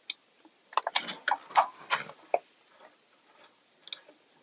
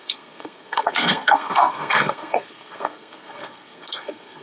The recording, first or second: first